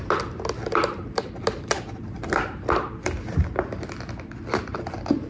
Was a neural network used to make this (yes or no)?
no